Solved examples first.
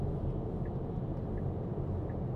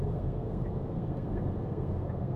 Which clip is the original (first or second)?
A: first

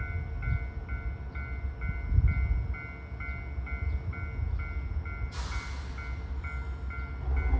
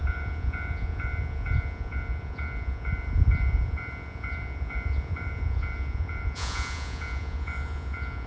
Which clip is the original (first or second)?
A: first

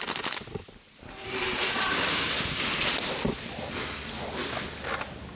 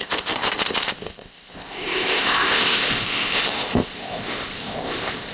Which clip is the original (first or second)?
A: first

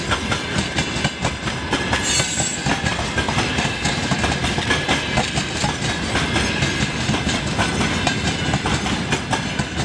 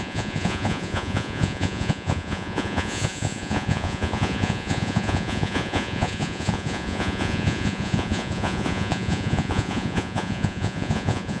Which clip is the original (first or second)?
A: first